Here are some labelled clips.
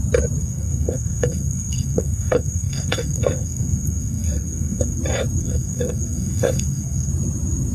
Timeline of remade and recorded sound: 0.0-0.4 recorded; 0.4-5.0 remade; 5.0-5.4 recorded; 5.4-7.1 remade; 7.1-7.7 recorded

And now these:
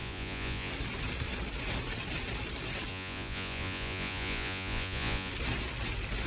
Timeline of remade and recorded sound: 0.0-0.7 remade; 0.7-2.9 recorded; 2.9-5.3 remade; 5.3-6.3 recorded

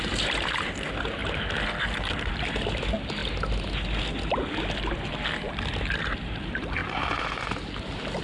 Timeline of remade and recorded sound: 0.0-8.2 recorded